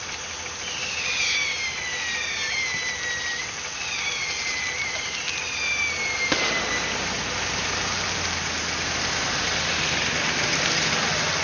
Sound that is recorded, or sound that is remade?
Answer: recorded